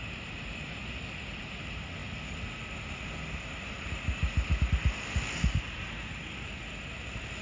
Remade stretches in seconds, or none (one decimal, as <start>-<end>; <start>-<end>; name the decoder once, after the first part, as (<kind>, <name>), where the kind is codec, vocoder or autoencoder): 0.0-0.8 (vocoder, BigVGAN v2); 1.4-2.0; 3.7-4.5; 7.0-7.4